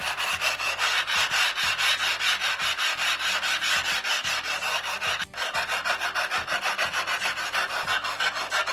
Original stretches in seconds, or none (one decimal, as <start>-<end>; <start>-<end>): 0.0-8.7